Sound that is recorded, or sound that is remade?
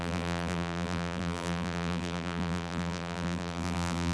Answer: remade